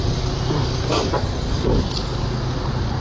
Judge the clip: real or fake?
real